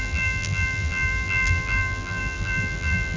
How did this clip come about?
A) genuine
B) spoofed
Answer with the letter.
B